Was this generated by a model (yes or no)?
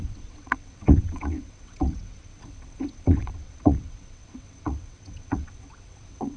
yes